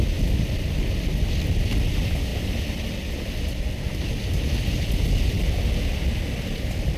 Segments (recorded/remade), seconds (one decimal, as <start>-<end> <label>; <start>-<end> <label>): 0.0-7.0 recorded